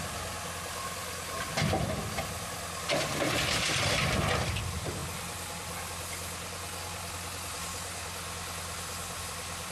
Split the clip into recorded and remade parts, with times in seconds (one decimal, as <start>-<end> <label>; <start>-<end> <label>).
0.0-9.7 recorded